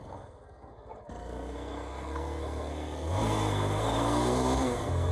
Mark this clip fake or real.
fake